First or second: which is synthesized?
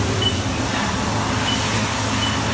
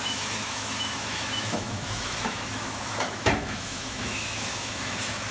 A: second